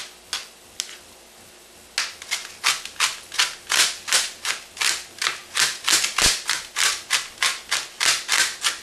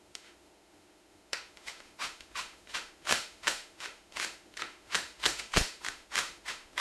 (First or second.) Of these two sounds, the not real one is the second